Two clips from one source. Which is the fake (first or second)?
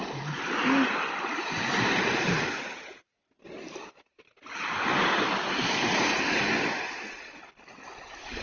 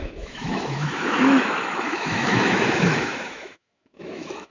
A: second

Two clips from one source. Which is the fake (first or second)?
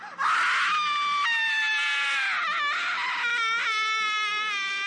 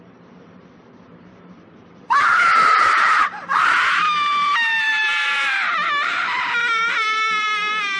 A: second